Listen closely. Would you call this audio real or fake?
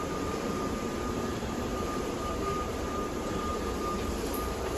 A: fake